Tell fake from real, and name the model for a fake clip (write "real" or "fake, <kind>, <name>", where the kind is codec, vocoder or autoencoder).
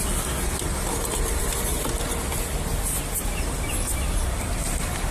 real